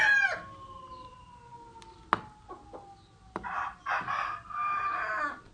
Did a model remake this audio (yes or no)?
no